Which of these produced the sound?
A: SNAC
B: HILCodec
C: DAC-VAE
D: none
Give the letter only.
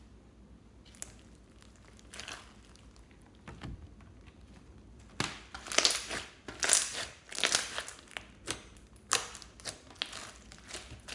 D